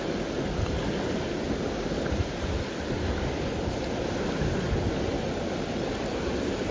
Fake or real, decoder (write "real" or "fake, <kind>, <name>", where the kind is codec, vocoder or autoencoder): real